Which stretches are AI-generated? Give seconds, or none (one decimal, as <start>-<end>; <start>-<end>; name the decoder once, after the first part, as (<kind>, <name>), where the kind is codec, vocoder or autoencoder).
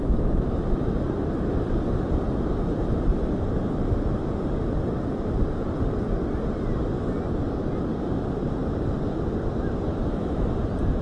9.9-10.5 (autoencoder, DAC-VAE)